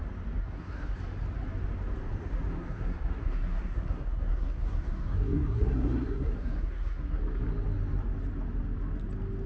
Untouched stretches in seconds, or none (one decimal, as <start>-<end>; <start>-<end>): 0.0-0.4; 1.0-2.5; 7.2-9.5